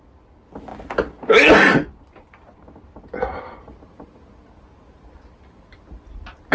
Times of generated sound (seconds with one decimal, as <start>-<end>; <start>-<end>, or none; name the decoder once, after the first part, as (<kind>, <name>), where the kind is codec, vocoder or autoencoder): none